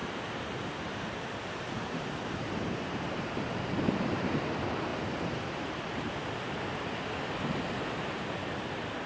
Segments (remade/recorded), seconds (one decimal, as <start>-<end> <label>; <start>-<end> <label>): 0.0-3.3 remade; 3.3-4.9 recorded; 4.9-6.2 remade; 6.2-9.1 recorded

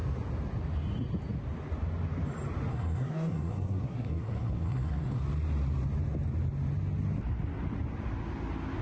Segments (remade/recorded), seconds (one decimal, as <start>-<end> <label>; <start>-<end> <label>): 0.0-2.7 recorded; 2.7-5.2 remade; 5.2-8.8 recorded

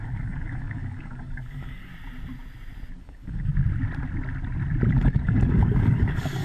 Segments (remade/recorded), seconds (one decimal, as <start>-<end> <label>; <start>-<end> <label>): 0.0-1.9 remade; 1.9-3.0 recorded; 3.0-3.5 remade; 3.5-5.0 recorded; 5.0-6.4 remade

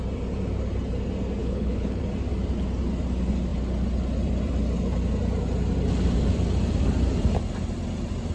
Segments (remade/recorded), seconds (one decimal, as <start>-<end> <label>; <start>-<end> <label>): 0.0-1.4 recorded; 1.4-2.0 remade; 2.0-8.3 recorded

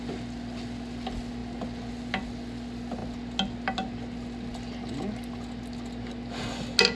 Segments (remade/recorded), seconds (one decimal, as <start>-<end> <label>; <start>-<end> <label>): 0.0-6.9 recorded

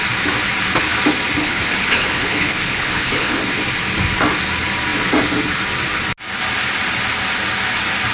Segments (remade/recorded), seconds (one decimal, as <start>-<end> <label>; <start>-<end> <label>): 0.0-1.4 recorded; 1.4-3.4 remade; 3.4-8.1 recorded

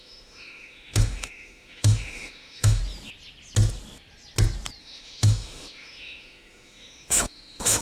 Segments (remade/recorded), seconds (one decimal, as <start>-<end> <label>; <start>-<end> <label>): 0.0-2.8 remade; 2.8-4.8 recorded; 4.8-7.8 remade